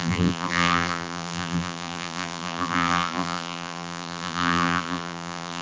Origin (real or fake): fake